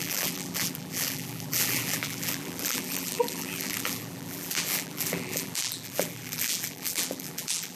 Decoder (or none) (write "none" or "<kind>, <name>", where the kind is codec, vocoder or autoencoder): vocoder, BigVGAN v2